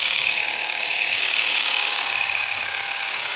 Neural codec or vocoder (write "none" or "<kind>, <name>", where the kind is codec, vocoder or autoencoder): codec, DAC